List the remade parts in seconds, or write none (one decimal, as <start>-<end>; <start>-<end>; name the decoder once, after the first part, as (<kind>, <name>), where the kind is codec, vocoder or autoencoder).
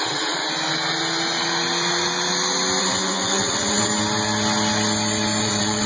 0.0-0.4 (vocoder, WaveNeXt); 2.8-3.9; 5.4-5.9